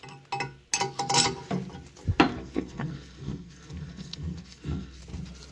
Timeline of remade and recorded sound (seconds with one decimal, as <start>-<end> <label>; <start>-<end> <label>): 0.0-2.3 recorded; 2.3-5.0 remade; 5.0-5.5 recorded